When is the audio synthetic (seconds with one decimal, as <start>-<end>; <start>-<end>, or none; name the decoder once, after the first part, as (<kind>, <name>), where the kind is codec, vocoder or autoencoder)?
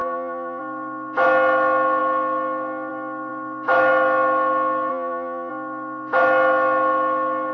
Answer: 0.0-0.6 (vocoder, Vocos); 4.9-5.5